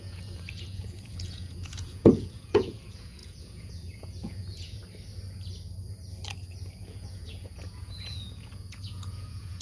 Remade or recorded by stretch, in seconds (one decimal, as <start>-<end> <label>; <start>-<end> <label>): 0.0-4.8 remade; 4.8-6.7 recorded; 6.7-9.6 remade